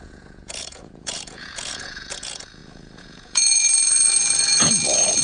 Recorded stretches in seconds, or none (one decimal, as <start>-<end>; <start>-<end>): none